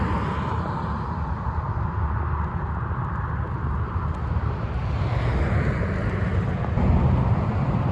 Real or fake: real